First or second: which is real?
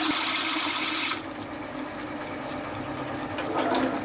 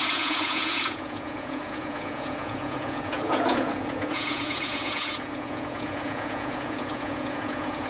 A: first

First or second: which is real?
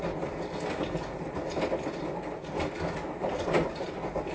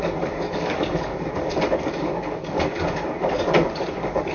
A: first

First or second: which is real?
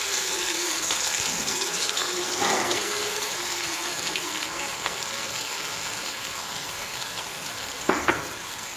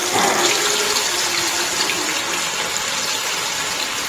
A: second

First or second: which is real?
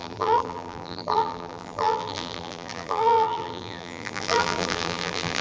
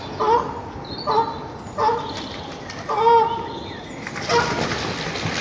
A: second